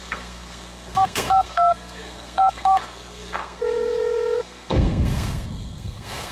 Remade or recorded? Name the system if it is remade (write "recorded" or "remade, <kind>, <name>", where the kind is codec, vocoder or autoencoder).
remade, codec, SNAC